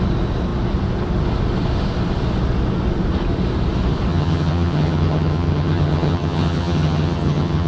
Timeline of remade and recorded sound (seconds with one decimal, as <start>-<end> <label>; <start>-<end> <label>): 0.0-4.1 recorded; 4.1-7.7 remade